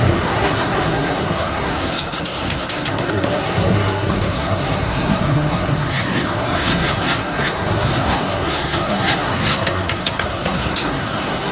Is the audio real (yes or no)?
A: no